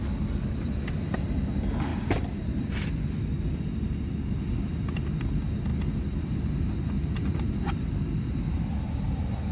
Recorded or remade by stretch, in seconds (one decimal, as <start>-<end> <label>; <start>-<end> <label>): 0.0-1.9 recorded; 1.9-2.7 remade; 2.7-9.5 recorded